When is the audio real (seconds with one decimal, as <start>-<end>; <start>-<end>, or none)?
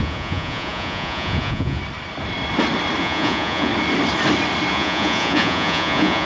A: 1.8-3.0; 3.7-4.7